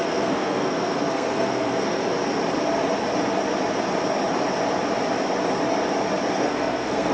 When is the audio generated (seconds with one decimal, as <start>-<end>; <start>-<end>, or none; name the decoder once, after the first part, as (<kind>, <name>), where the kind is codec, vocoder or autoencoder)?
0.0-2.0 (codec, SNAC); 6.3-7.1